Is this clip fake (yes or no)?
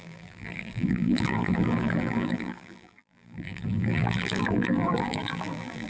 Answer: yes